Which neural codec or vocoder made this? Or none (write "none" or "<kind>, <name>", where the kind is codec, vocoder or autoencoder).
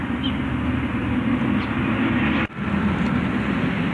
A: none